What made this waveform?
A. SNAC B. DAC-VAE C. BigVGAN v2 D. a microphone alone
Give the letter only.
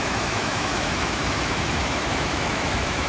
B